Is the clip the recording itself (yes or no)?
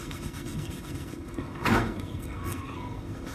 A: no